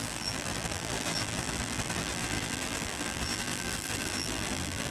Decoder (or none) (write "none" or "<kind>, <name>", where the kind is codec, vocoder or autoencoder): vocoder, BigVGAN v2